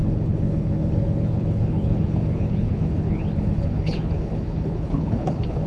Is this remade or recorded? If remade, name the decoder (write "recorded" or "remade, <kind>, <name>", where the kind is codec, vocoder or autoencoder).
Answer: remade, codec, HILCodec